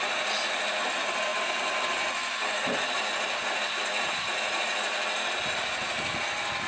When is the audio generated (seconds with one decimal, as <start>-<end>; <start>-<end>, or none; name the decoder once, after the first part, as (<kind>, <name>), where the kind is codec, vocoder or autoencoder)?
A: none